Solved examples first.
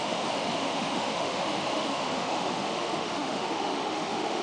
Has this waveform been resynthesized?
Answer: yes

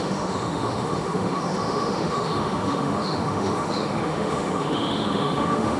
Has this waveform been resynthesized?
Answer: yes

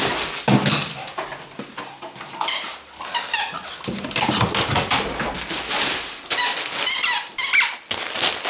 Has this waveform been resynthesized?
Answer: no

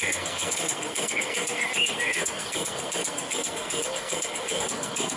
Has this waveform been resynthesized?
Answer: yes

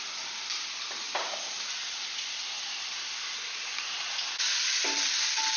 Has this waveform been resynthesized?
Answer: no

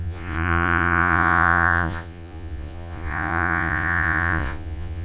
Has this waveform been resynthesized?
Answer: yes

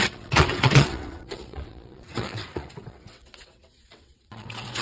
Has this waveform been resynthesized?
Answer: yes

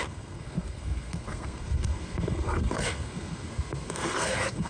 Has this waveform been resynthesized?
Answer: yes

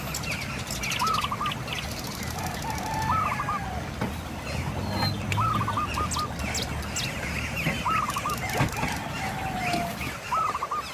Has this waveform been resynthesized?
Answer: no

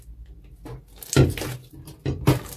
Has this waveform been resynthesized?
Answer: no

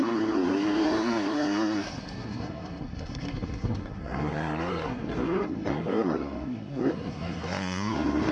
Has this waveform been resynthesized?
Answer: yes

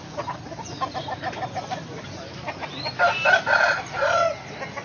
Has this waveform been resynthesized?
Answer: no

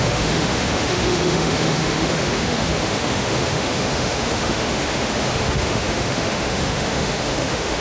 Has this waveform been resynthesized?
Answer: yes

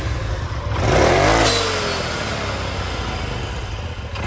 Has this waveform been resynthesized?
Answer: no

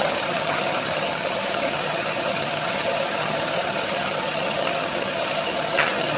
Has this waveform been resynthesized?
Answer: yes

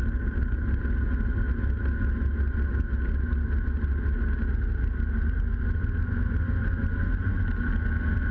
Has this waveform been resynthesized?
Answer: no